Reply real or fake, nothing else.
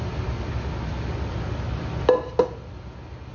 real